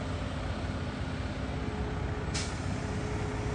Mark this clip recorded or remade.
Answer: recorded